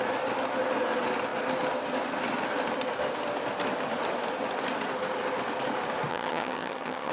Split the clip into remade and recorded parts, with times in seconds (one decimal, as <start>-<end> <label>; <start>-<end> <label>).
0.0-6.1 recorded; 6.1-7.1 remade

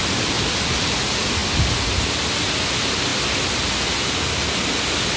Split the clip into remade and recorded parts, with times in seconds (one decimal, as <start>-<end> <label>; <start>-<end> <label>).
0.0-5.2 recorded

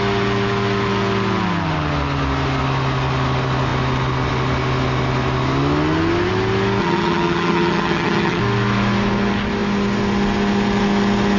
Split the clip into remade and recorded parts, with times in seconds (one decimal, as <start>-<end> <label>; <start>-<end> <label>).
0.0-6.8 recorded; 6.8-8.4 remade; 8.4-11.4 recorded

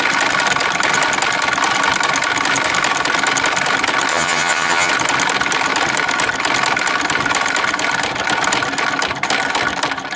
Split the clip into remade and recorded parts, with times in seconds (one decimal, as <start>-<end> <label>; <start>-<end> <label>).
0.0-4.1 recorded; 4.1-4.9 remade; 4.9-10.2 recorded